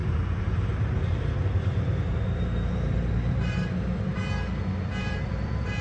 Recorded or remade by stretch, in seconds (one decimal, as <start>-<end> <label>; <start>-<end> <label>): 0.0-4.2 remade; 4.2-5.0 recorded; 5.0-5.8 remade